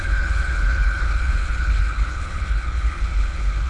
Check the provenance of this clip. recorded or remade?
remade